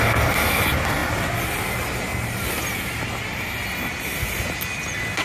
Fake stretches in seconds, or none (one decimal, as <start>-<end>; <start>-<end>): none